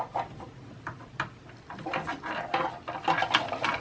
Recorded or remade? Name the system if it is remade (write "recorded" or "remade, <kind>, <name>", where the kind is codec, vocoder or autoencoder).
recorded